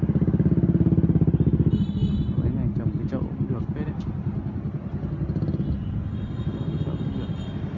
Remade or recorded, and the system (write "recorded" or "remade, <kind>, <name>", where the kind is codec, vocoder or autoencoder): recorded